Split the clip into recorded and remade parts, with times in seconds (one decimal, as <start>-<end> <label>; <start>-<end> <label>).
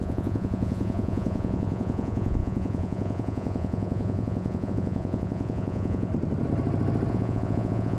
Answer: 0.0-6.1 remade; 6.1-7.1 recorded; 7.1-8.0 remade